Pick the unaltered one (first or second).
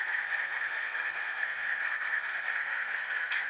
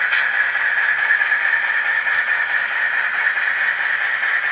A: second